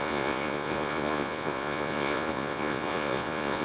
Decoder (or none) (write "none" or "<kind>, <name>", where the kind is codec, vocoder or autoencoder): vocoder, Vocos